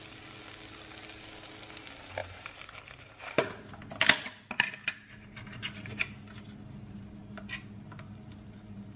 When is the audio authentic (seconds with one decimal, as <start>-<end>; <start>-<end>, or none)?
0.0-2.2; 3.7-5.1; 6.0-9.0